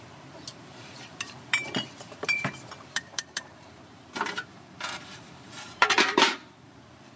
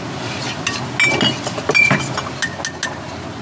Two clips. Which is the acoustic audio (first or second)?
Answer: second